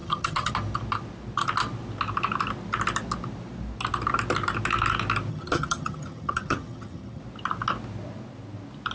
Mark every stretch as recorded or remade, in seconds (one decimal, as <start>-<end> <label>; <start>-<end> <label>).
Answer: 0.0-0.5 remade; 0.5-5.3 recorded; 5.3-7.2 remade; 7.2-8.9 recorded